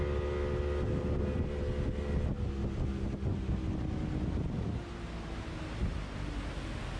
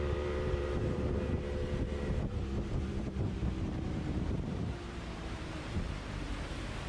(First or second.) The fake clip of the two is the second